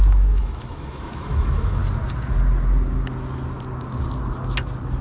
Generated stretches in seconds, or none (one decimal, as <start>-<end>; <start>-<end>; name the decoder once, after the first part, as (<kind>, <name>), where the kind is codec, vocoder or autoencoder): 0.0-1.8 (autoencoder, DAC-VAE)